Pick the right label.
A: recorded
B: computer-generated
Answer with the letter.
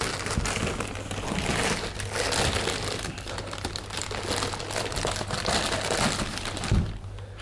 A